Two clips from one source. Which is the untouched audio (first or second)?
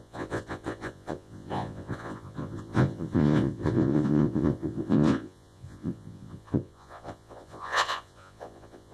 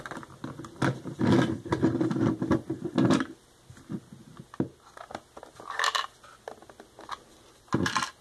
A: second